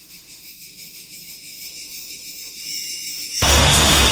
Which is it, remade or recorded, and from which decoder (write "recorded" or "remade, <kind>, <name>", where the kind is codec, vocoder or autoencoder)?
remade, autoencoder, DAC-VAE